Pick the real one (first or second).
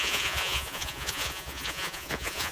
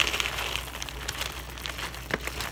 second